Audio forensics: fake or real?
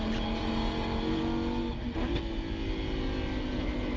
real